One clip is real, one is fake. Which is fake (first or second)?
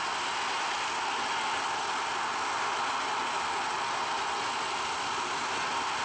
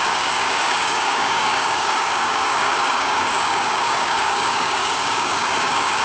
second